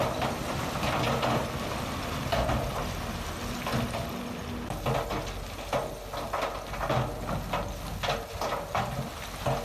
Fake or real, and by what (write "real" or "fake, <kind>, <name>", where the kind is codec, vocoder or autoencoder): real